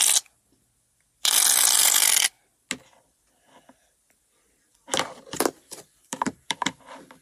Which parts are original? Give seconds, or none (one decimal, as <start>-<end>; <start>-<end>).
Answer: 0.0-6.1; 6.6-7.2